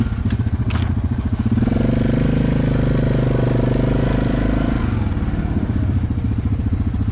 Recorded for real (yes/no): yes